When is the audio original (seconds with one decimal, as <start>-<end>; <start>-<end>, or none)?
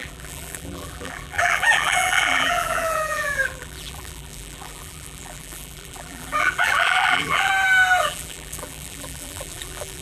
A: 7.5-8.0